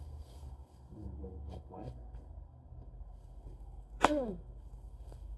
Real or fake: fake